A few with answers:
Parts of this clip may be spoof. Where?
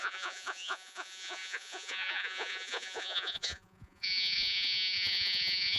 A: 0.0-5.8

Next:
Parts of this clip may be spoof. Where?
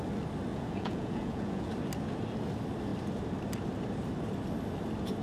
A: 0.5-1.7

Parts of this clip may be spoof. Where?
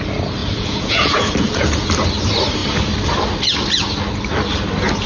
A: 0.4-1.9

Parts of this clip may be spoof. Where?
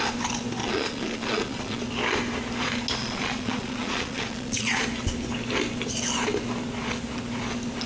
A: 0.6-1.8; 3.0-4.8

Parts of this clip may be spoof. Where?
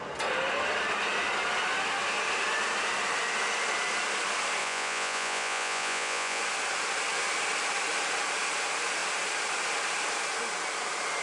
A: 4.6-6.4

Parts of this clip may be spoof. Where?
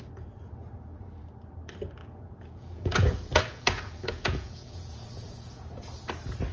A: 2.0-5.9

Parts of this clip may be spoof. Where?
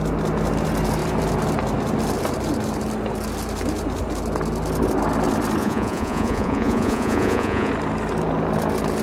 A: 5.6-7.7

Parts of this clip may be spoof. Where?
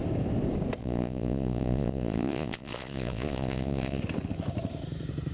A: 0.8-4.0